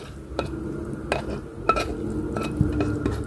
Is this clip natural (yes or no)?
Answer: yes